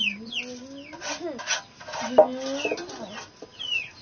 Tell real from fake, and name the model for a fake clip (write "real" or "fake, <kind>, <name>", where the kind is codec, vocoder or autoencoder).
real